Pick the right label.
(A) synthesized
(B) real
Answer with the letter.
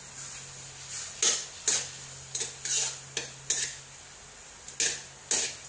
B